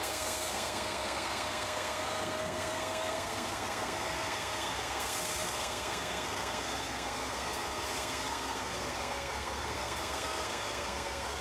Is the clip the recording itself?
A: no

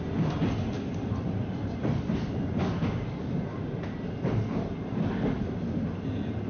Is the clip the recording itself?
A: yes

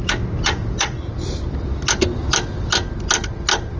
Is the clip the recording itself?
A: yes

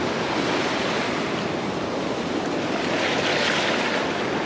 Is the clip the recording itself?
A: yes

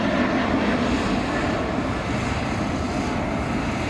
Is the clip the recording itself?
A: yes